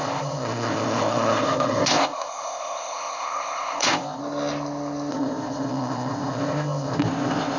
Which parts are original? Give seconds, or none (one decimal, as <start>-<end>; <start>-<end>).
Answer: 4.2-5.1